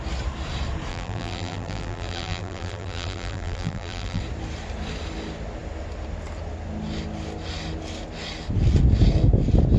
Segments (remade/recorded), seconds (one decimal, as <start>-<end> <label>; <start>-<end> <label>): 0.0-0.9 recorded; 0.9-4.2 remade; 4.2-9.8 recorded